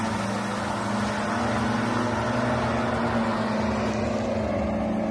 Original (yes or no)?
yes